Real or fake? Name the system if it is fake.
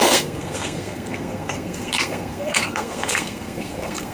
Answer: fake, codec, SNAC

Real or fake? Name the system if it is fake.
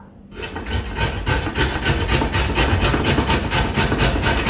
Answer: real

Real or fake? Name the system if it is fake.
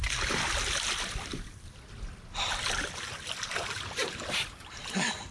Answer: real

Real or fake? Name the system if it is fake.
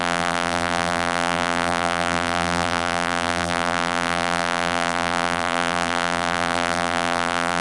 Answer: fake, vocoder, BigVGAN v2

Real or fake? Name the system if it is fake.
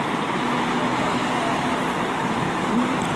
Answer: real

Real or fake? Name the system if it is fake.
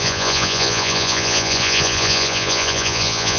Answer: fake, vocoder, Vocos